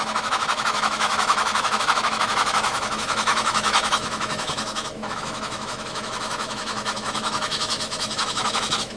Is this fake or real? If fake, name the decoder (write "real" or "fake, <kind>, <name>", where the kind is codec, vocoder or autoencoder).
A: fake, autoencoder, DAC-VAE